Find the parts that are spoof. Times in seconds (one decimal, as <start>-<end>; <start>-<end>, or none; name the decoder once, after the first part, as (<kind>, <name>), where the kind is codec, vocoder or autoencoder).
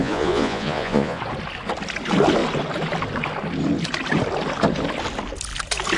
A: 0.0-1.2 (vocoder, Vocos)